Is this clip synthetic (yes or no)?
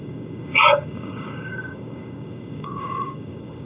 yes